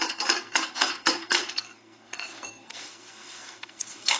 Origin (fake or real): fake